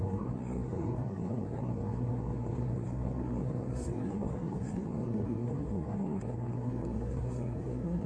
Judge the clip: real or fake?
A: fake